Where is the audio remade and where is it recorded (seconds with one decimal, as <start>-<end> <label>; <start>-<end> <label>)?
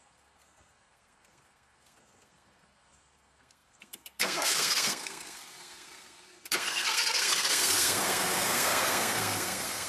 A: 0.0-9.9 remade